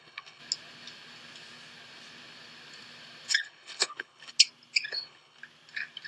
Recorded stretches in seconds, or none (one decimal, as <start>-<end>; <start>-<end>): 0.4-3.3; 4.3-4.9; 5.4-6.1